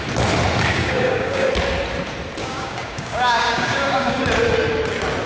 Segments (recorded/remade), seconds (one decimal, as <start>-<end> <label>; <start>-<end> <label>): 0.0-0.7 recorded; 0.7-1.5 remade; 1.5-2.4 recorded; 2.4-4.2 remade; 4.2-5.3 recorded